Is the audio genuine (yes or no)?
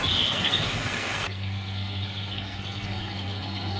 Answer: no